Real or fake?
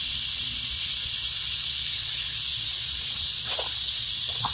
fake